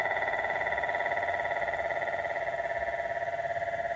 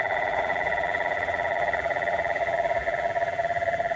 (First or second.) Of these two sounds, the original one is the first